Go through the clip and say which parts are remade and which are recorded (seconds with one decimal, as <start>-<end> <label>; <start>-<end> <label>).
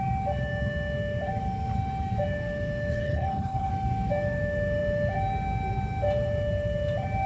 0.0-2.9 recorded; 2.9-3.7 remade; 3.7-7.3 recorded